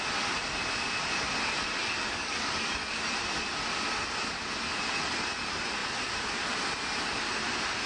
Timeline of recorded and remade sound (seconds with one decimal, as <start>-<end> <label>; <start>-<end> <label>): 0.0-1.8 recorded; 1.8-3.1 remade; 3.1-7.9 recorded